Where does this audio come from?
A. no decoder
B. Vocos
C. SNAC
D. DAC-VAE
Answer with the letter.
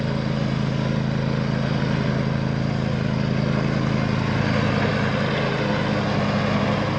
A